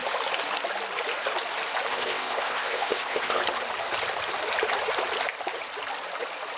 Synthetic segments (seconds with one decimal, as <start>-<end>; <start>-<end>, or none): 1.9-3.4